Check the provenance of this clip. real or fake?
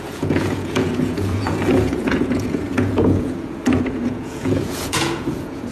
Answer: fake